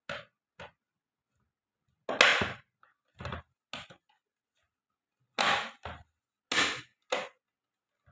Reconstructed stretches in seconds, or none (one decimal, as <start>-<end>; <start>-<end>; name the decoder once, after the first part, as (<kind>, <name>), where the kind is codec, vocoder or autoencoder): none